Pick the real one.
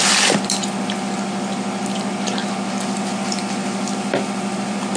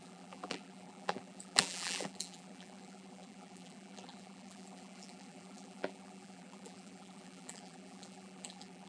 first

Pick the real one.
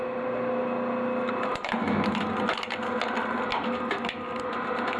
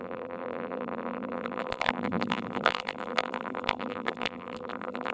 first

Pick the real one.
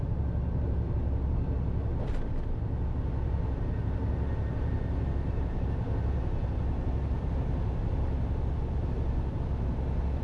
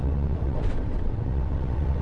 first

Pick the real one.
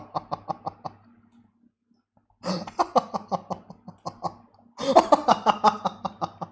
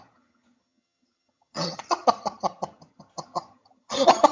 first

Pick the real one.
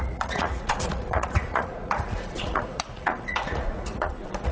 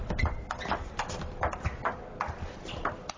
second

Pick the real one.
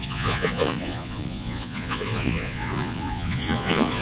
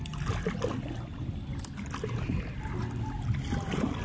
second